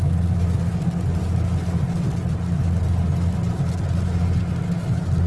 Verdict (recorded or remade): recorded